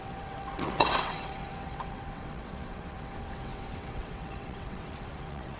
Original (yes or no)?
no